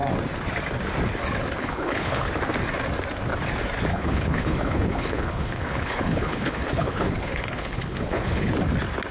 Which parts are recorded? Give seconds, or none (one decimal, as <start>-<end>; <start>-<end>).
0.0-1.6; 2.3-3.9; 8.5-9.1